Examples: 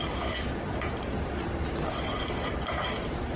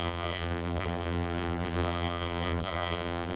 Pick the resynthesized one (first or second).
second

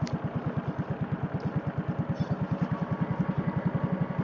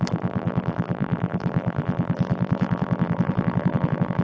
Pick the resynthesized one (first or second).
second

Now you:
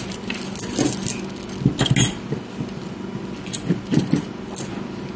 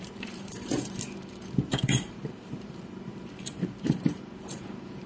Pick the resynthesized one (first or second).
second